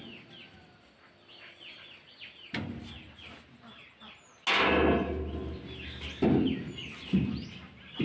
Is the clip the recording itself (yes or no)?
yes